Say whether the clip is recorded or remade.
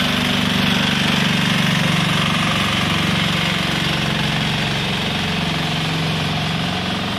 recorded